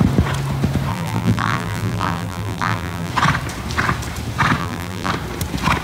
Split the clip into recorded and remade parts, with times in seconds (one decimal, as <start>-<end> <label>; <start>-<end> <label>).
0.0-0.9 recorded; 0.9-3.1 remade; 3.1-4.6 recorded; 4.6-5.1 remade; 5.1-5.8 recorded